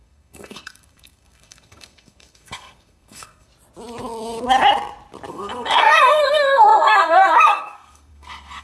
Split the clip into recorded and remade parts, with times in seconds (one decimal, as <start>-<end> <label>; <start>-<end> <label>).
0.0-3.5 remade; 3.5-5.3 recorded; 5.3-8.6 remade